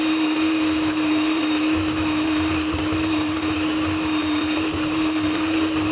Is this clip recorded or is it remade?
remade